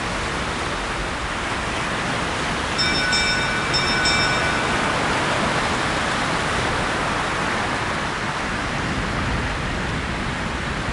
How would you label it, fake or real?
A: real